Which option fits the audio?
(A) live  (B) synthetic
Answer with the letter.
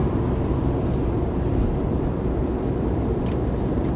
B